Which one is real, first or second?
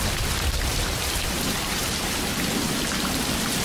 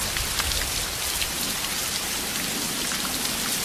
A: second